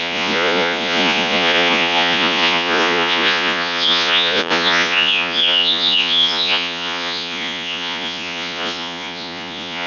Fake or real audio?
fake